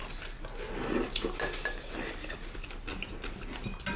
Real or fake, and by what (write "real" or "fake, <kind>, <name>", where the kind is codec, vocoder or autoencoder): real